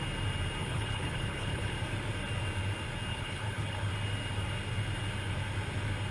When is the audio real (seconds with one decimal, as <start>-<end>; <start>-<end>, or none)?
0.0-0.6; 1.7-3.1; 3.9-6.1